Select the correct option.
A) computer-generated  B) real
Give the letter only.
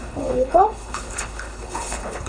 A